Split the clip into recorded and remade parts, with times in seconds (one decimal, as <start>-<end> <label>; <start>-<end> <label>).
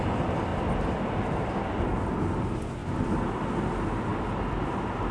0.0-5.1 recorded